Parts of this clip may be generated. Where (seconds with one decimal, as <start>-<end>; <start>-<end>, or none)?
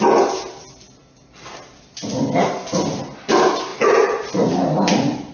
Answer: 3.7-5.3